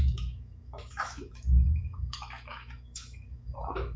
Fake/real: fake